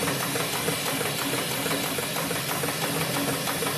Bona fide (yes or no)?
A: yes